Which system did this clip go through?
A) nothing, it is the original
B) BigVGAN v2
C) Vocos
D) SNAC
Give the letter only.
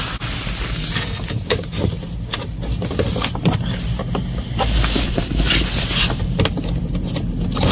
A